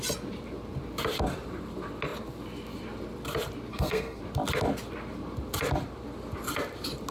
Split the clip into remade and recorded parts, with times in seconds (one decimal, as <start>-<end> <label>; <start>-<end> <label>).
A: 0.0-3.7 recorded; 3.7-4.2 remade; 4.2-7.1 recorded